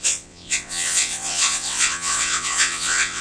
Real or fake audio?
fake